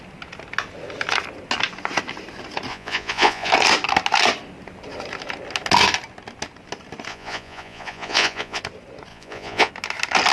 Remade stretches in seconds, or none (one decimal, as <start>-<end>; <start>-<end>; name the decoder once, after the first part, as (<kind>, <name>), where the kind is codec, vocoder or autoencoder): 2.7-3.5 (vocoder, Vocos); 7.1-8.6; 9.1-9.7